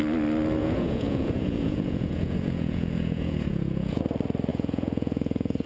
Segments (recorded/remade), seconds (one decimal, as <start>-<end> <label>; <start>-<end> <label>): 0.0-0.6 recorded; 0.6-4.0 remade; 4.0-4.5 recorded; 4.5-5.7 remade